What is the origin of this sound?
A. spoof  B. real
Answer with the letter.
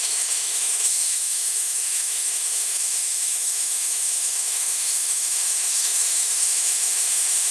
A